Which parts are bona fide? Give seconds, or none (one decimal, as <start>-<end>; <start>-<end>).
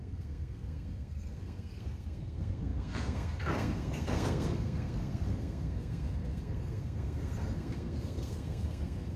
none